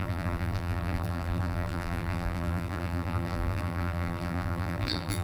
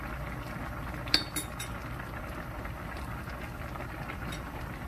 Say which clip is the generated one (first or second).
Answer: first